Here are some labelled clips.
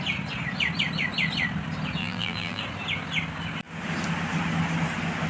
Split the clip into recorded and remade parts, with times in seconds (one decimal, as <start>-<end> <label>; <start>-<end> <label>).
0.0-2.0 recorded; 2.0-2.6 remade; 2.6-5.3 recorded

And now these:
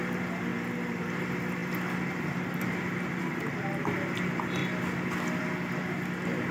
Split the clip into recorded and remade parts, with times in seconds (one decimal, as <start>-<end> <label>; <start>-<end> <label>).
0.0-4.6 remade; 4.6-5.4 recorded; 5.4-6.5 remade

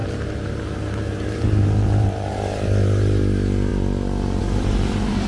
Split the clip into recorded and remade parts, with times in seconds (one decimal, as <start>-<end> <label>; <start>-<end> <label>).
0.0-3.2 remade; 3.2-5.3 recorded

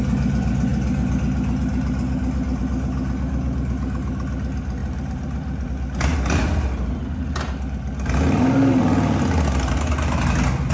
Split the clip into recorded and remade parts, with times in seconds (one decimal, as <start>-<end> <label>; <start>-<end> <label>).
0.0-4.8 recorded; 4.8-5.7 remade; 5.7-10.7 recorded

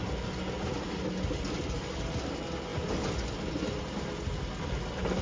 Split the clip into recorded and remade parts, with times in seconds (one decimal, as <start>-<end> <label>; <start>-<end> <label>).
0.0-5.2 recorded

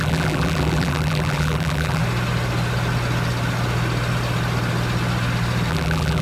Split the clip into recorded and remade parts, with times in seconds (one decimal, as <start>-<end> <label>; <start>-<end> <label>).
0.0-2.0 remade; 2.0-5.7 recorded; 5.7-6.2 remade